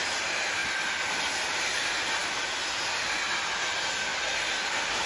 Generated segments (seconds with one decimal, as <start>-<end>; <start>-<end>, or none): none